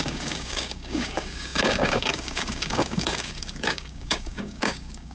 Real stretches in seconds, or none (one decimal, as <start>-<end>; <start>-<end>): none